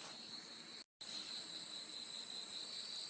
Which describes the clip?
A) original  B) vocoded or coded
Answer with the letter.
A